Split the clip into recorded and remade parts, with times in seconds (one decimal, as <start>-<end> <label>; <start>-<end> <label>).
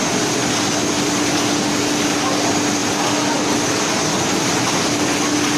0.0-5.6 recorded